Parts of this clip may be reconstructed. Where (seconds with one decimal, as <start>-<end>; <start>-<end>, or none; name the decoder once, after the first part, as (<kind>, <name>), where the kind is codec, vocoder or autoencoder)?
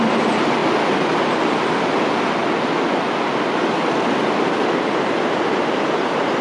none